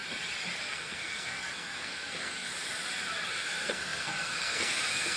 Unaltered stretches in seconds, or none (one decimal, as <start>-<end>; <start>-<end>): 0.0-0.6; 2.5-3.3